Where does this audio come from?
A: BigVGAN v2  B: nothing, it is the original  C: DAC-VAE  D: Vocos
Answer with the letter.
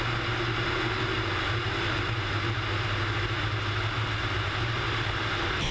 B